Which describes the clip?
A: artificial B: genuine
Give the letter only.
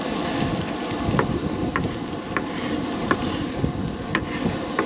B